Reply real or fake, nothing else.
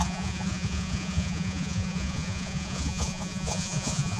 fake